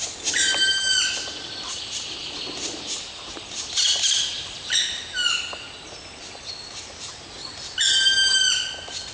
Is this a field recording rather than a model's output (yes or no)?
yes